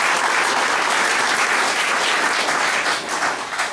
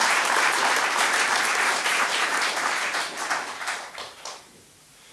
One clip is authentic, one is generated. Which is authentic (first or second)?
first